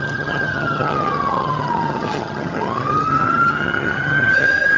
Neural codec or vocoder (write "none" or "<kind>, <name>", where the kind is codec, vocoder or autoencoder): vocoder, HiFi-GAN